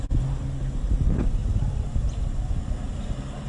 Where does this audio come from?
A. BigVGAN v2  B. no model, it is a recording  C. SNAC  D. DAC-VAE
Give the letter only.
B